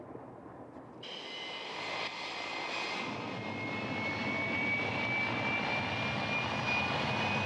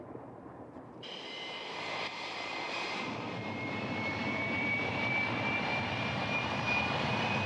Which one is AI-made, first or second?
second